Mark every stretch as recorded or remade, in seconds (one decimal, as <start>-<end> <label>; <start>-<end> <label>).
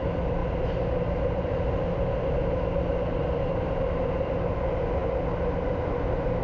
0.0-6.4 recorded